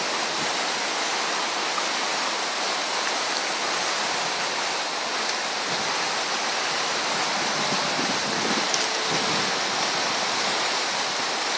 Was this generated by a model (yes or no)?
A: no